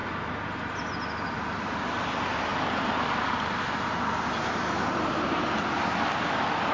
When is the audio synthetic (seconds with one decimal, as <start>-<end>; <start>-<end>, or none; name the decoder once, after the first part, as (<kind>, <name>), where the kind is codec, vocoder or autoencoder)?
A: none